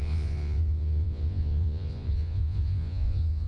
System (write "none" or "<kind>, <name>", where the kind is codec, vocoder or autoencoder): vocoder, Vocos